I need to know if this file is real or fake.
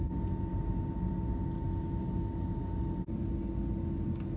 real